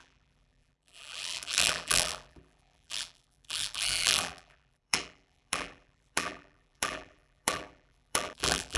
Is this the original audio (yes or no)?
no